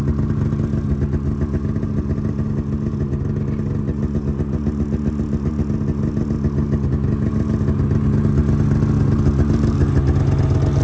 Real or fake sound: real